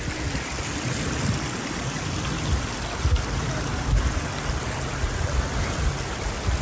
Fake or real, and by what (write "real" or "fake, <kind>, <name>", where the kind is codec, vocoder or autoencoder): real